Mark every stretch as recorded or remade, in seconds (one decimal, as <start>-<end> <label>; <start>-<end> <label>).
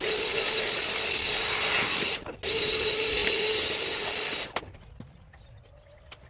0.0-6.3 recorded